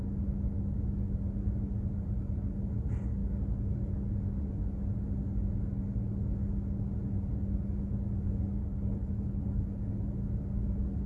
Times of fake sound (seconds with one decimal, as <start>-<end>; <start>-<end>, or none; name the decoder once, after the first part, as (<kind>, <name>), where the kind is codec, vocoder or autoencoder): 8.6-9.5 (codec, HILCodec)